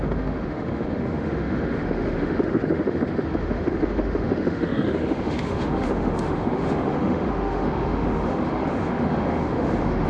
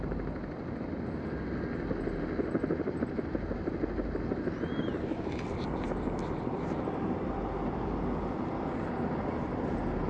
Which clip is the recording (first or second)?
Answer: second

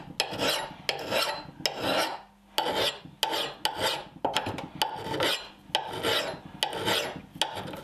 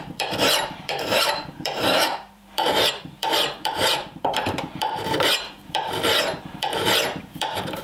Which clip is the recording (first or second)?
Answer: first